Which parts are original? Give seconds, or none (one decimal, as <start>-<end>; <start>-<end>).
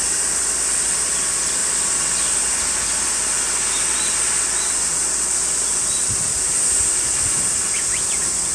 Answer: 0.0-1.6; 2.4-8.5